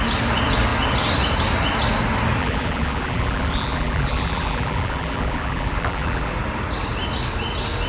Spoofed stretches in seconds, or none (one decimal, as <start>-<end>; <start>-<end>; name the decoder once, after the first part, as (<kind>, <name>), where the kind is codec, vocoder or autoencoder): 2.4-6.3 (vocoder, BigVGAN v2)